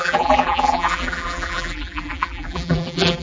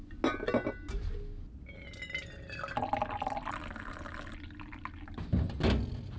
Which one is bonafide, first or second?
second